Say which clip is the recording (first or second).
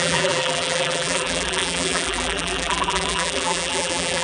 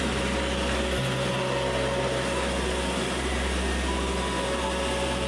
second